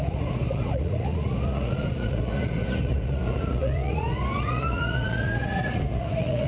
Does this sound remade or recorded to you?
remade